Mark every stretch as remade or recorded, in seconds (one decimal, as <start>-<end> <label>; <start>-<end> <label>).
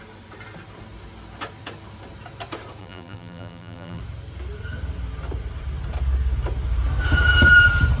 0.0-2.8 recorded; 2.8-4.0 remade; 4.0-8.0 recorded